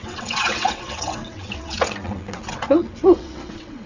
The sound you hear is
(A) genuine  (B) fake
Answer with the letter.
B